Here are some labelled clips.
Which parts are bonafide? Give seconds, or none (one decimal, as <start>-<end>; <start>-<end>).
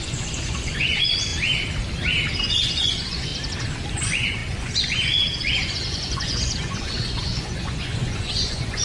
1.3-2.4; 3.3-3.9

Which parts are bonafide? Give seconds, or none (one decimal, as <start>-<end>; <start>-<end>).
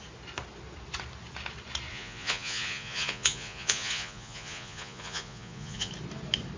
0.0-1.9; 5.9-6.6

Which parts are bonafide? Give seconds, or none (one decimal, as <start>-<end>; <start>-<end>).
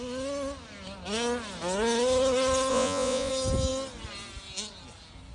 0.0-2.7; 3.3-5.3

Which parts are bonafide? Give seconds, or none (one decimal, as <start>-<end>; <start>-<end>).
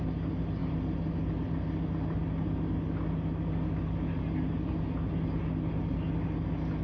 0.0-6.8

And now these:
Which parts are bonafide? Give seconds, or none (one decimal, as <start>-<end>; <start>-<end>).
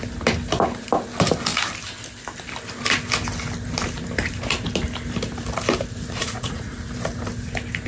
0.0-6.2; 6.7-7.9